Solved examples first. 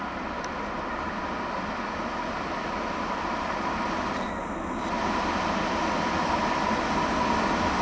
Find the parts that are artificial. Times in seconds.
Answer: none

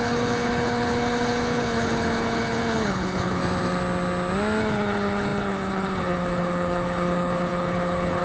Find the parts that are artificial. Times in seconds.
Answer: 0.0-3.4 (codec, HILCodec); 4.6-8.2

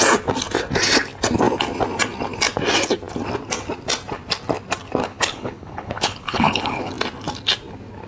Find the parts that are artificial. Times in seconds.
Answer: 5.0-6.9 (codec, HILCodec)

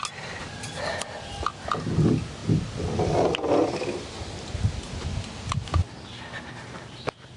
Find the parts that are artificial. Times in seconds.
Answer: none

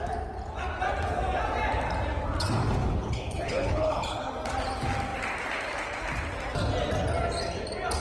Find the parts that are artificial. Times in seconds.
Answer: 2.8-4.3 (codec, HILCodec)

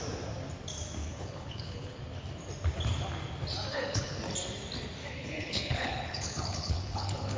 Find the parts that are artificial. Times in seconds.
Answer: 1.0-2.0 (codec, HILCodec); 3.7-4.2; 5.0-7.4

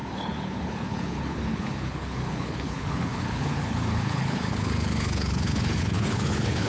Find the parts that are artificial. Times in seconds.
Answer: 0.0-6.7 (codec, HILCodec)

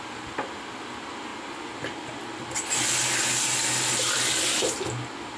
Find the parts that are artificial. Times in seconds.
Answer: none